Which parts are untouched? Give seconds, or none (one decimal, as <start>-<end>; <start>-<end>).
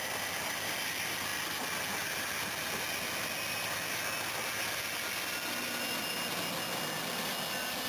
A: 0.0-7.9